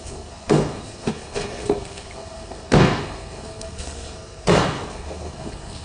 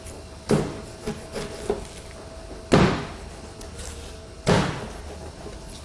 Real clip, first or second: second